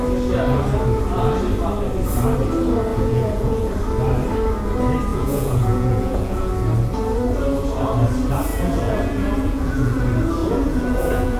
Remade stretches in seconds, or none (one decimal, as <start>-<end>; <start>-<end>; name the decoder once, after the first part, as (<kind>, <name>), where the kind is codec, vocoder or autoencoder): 2.9-3.7 (vocoder, Vocos); 5.1-6.5; 8.5-10.0; 10.4-11.4